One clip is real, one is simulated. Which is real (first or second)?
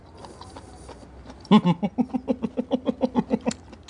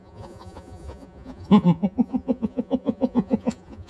first